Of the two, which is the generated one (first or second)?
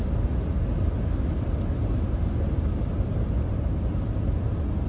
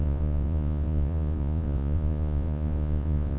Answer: second